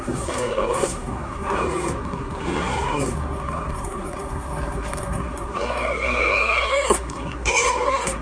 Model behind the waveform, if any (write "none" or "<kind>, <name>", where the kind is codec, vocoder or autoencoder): codec, SNAC